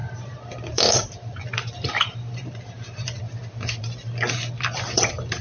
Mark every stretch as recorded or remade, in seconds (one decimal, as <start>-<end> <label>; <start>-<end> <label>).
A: 0.0-5.4 remade